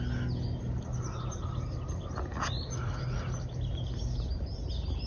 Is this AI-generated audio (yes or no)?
no